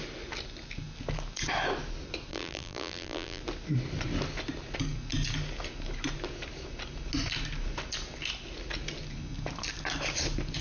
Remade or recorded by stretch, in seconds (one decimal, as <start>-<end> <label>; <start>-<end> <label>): 0.0-2.3 recorded; 2.3-3.4 remade; 3.4-10.6 recorded

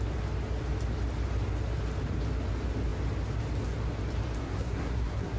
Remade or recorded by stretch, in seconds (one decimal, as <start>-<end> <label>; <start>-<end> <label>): 0.0-4.4 recorded; 4.4-5.4 remade

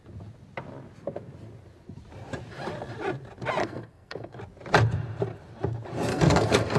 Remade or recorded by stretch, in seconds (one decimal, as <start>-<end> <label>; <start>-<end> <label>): 0.0-3.6 recorded; 3.6-4.4 remade; 4.4-6.1 recorded; 6.1-6.8 remade

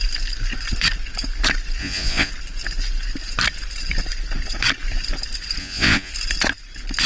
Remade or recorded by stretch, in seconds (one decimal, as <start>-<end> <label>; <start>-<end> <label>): 0.0-1.8 recorded; 1.8-2.3 remade; 2.3-5.6 recorded; 5.6-6.1 remade; 6.1-7.1 recorded

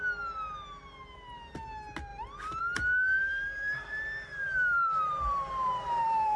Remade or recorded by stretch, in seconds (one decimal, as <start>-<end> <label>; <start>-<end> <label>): 0.0-3.2 recorded; 3.2-4.0 remade; 4.0-4.4 recorded; 4.4-6.4 remade

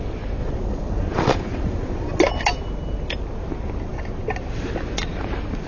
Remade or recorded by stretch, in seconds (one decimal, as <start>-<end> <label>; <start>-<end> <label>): 0.0-0.4 recorded; 0.4-2.2 remade; 2.2-5.7 recorded

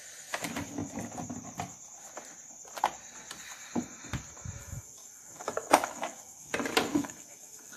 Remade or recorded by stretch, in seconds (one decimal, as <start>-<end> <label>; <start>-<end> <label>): 0.0-4.6 recorded; 4.6-6.5 remade; 6.5-6.9 recorded; 6.9-7.8 remade